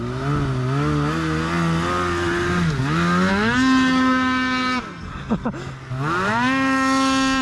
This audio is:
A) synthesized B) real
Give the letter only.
B